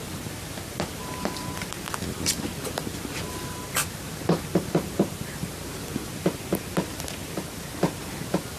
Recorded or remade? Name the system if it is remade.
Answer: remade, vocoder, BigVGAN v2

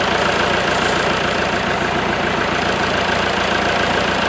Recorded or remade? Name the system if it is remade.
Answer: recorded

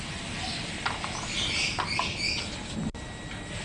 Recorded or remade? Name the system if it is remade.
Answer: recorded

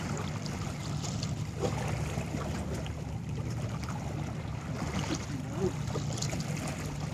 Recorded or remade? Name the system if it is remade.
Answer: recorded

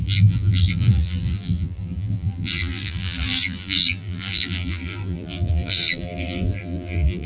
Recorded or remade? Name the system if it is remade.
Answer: remade, vocoder, BigVGAN v2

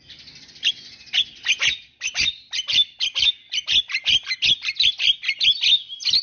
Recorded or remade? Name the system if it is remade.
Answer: recorded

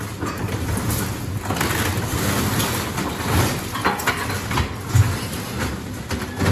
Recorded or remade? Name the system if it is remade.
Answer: recorded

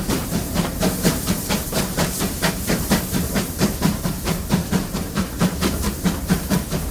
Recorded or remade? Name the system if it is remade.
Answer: remade, vocoder, BigVGAN v2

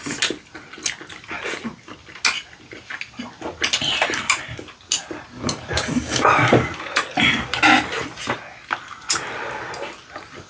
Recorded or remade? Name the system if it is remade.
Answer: recorded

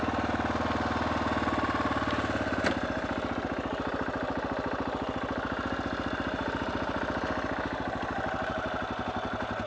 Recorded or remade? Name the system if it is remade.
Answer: recorded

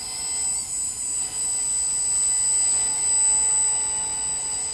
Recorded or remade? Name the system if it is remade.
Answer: recorded